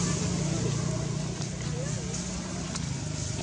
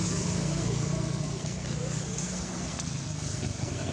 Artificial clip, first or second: second